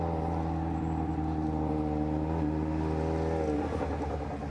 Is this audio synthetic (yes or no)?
no